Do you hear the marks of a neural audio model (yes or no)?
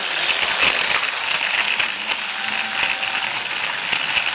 no